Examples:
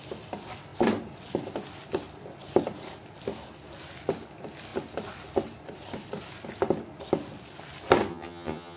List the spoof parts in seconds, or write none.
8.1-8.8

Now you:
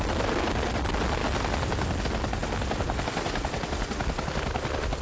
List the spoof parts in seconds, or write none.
none

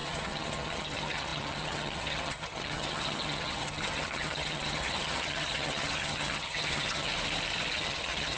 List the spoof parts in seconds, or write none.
0.0-7.1; 7.7-8.4

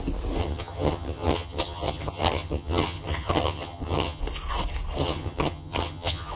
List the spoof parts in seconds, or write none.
0.4-4.2; 5.0-6.3

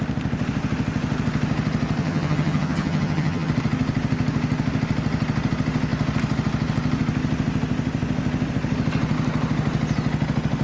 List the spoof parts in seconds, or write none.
2.0-3.5